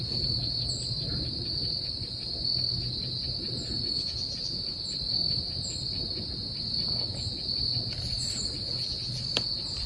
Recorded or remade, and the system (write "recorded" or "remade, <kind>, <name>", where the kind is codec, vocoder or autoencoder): recorded